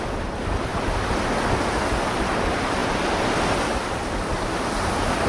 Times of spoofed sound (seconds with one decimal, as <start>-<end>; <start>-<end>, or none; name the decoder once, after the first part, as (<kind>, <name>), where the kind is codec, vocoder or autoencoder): none